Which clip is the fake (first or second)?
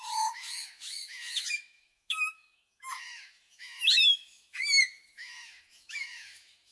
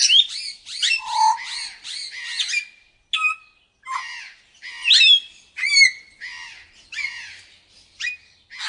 first